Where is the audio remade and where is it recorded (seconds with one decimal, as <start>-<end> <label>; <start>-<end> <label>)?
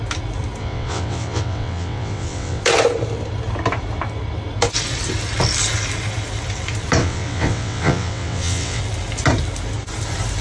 0.0-0.6 recorded; 0.6-2.6 remade; 2.6-7.0 recorded; 7.0-8.8 remade; 8.8-10.4 recorded